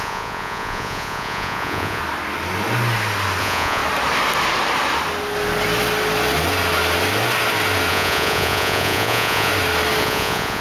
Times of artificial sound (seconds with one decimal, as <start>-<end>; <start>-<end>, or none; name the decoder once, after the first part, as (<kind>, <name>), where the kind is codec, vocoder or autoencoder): 0.0-2.0 (vocoder, Vocos); 3.4-3.8; 7.9-9.5; 10.0-10.6